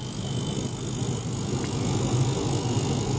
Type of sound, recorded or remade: recorded